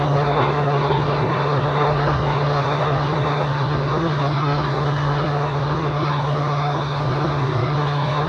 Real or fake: fake